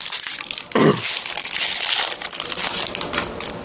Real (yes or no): yes